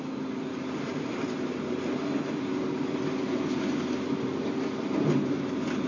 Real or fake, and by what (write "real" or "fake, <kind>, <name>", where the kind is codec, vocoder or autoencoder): real